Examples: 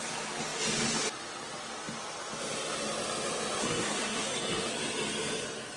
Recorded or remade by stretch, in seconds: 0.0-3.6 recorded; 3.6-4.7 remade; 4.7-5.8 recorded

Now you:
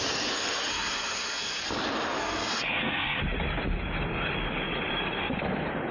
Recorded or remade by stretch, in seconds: 0.0-0.7 recorded; 0.7-1.6 remade; 1.6-2.2 recorded; 2.2-3.2 remade; 3.2-5.9 recorded

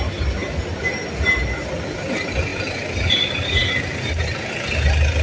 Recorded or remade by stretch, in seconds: 0.0-5.2 recorded

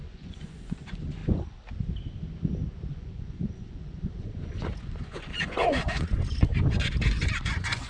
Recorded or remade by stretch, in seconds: 0.0-1.2 remade; 1.2-2.9 recorded; 2.9-7.9 remade

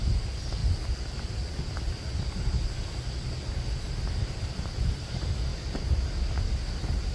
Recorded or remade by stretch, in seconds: 0.0-7.1 recorded

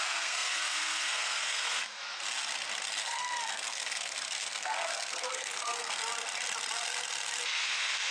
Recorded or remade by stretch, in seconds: 0.0-2.0 remade; 2.0-3.0 recorded; 3.0-6.0 remade; 6.0-7.6 recorded; 7.6-8.1 remade

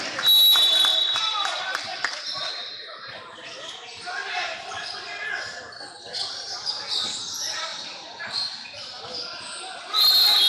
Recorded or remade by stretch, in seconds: 0.0-0.9 recorded; 0.9-2.5 remade; 2.5-4.2 recorded; 4.2-5.3 remade; 5.3-10.5 recorded

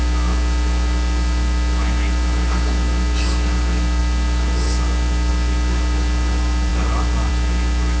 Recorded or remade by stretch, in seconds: 0.0-8.0 recorded